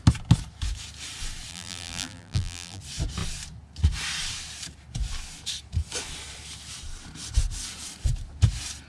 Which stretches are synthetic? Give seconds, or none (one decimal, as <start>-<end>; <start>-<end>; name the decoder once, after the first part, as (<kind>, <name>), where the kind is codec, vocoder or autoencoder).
1.5-2.8 (vocoder, BigVGAN v2)